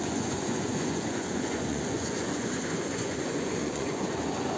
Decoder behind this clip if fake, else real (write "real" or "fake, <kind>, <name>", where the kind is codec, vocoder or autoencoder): fake, vocoder, Vocos